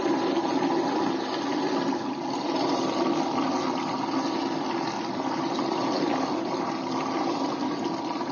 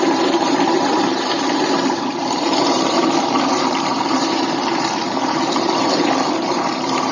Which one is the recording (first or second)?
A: first